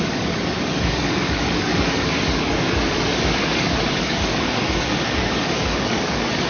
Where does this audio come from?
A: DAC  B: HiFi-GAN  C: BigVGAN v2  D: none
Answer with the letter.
A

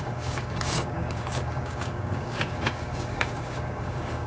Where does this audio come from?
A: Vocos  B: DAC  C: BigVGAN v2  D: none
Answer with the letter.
B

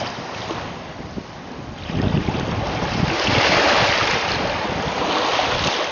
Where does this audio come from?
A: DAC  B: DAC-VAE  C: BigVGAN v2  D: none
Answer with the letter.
D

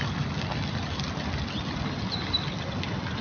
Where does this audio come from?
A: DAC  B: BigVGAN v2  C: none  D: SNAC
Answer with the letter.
C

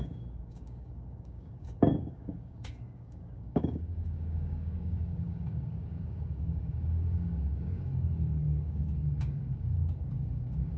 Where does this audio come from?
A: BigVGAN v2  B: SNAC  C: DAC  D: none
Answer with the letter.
C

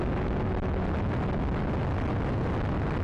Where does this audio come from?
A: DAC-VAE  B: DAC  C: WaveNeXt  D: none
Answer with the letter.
D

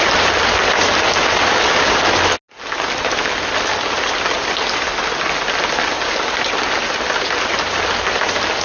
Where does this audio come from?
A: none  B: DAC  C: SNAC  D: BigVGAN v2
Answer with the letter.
A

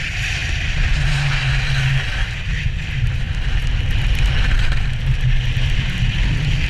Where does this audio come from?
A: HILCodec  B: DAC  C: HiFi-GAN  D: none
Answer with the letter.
D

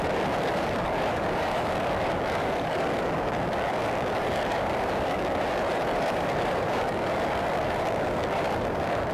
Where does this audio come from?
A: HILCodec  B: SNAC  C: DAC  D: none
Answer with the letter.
C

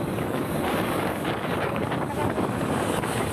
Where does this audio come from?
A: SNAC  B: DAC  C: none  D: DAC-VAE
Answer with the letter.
B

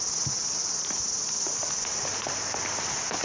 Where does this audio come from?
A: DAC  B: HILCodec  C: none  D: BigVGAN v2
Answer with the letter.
C